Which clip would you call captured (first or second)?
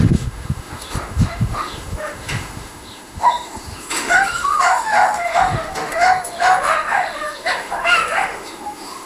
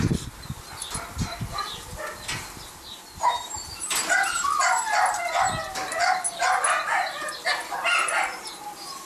second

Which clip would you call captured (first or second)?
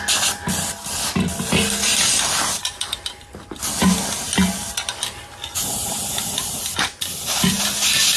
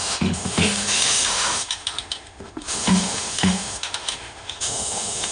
first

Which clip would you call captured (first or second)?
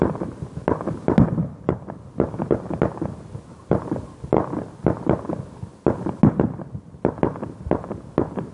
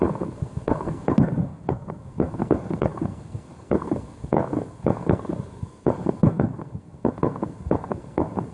first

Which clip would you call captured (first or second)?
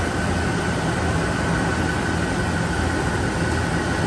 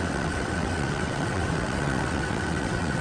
first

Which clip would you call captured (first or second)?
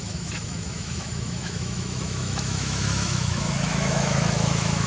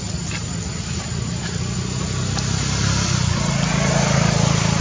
second